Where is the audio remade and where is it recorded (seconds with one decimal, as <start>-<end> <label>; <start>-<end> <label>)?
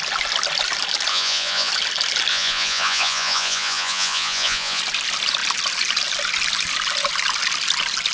0.0-1.1 recorded; 1.1-1.7 remade; 1.7-2.3 recorded; 2.3-4.8 remade; 4.8-8.1 recorded